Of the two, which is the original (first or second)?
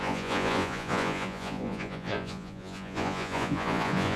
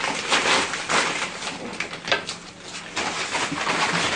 second